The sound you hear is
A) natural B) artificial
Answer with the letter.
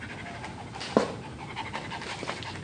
A